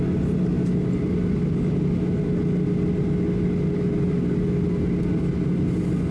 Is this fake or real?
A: real